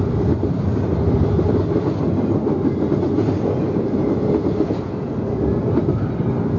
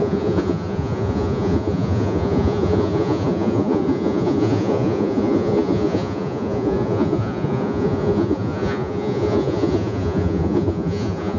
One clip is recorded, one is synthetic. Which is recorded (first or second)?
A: first